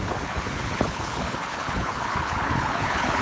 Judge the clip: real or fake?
fake